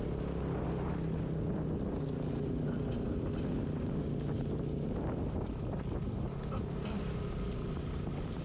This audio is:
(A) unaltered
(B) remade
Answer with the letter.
A